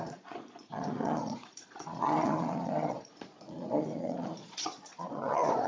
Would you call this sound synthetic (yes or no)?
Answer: yes